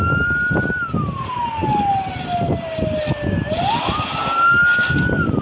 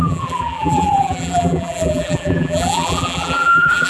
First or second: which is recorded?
first